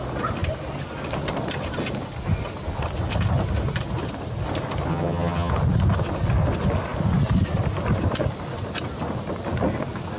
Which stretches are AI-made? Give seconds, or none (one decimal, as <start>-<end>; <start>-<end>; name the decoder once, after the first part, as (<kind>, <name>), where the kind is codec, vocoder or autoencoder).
4.9-5.5 (vocoder, HiFi-GAN)